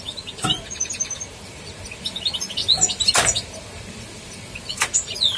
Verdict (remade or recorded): recorded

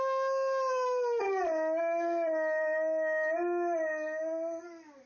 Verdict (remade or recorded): recorded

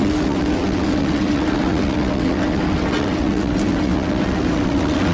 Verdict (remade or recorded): remade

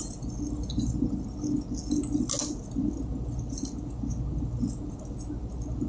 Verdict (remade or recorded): recorded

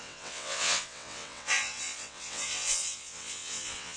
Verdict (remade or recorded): remade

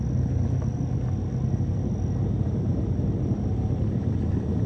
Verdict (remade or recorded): recorded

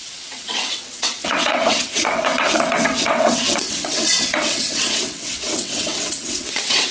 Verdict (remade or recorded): remade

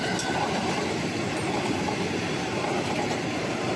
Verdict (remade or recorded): recorded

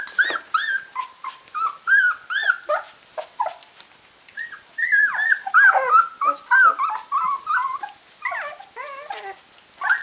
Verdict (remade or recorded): recorded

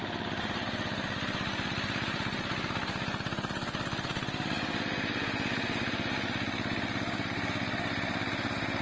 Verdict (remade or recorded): recorded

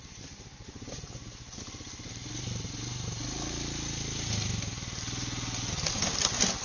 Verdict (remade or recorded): recorded